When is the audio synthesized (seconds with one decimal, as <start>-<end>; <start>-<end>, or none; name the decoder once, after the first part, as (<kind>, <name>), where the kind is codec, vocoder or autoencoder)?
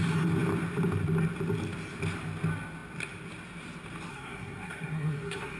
4.1-5.6 (codec, SNAC)